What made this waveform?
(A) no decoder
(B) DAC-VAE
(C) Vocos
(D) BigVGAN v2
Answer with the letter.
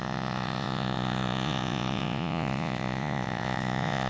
C